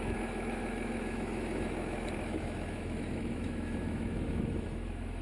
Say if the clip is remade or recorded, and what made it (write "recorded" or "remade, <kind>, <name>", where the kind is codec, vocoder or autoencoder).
remade, autoencoder, DAC-VAE